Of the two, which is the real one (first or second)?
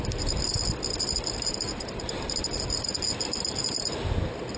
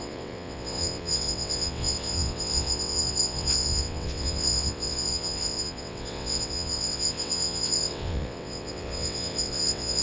first